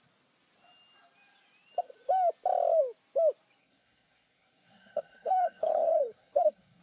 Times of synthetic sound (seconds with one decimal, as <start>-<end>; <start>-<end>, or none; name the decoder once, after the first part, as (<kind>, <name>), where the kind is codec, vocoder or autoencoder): 3.6-6.8 (codec, SNAC)